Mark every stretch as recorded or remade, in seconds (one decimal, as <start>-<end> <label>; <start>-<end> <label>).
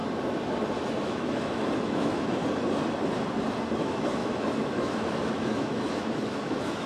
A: 0.0-1.0 recorded; 1.0-2.4 remade; 2.4-3.8 recorded; 3.8-6.9 remade